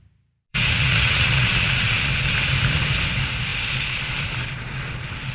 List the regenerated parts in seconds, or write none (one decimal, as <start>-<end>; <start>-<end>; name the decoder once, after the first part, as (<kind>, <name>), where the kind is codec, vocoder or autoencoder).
0.5-2.1 (vocoder, Vocos)